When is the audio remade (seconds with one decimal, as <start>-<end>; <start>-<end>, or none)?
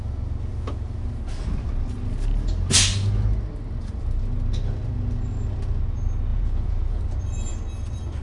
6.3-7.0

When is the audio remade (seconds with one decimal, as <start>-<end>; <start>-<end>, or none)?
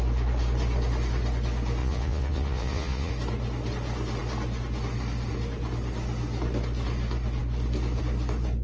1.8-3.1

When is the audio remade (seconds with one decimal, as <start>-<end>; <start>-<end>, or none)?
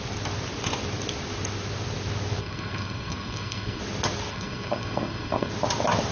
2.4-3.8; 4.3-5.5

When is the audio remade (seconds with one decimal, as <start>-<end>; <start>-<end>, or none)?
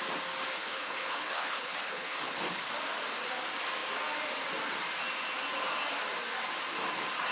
0.5-2.6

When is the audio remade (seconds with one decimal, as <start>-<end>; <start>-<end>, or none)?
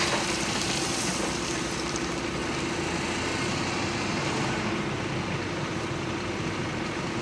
0.0-2.4; 4.2-7.2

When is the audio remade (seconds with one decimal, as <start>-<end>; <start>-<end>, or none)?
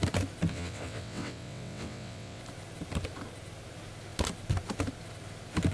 0.5-2.4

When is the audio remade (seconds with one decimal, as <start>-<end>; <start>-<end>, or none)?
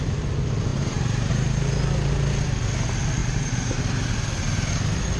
0.7-1.3; 3.2-3.8